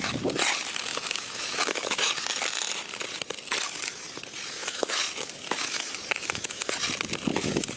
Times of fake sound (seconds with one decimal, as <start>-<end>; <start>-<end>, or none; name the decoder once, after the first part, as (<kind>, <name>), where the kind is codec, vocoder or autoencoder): 0.9-2.1 (autoencoder, DAC-VAE); 4.6-6.7